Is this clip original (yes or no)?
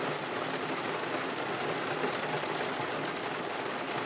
yes